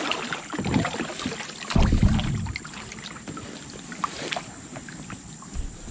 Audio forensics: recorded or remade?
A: remade